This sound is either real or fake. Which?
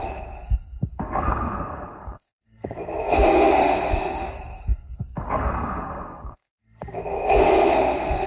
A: fake